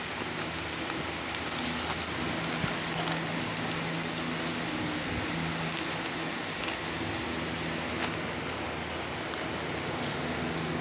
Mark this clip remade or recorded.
recorded